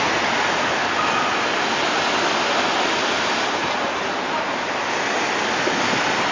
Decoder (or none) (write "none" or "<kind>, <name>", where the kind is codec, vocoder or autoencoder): none